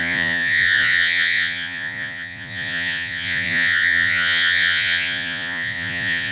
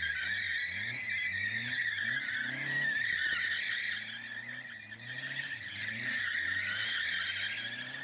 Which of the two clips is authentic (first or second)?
second